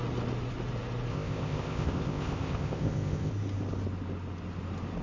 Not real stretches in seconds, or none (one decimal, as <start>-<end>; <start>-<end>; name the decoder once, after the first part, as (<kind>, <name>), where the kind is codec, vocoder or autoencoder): 1.1-3.3 (codec, ZipCodec)